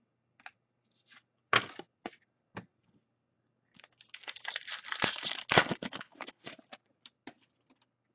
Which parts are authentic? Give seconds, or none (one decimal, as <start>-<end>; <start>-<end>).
0.0-6.1; 7.0-8.1